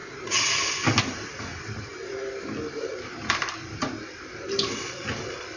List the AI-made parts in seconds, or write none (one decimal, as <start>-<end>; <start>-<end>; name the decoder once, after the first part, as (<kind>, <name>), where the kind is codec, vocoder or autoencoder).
1.0-5.6 (vocoder, BigVGAN v2)